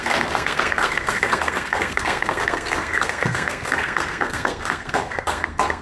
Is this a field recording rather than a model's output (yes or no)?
no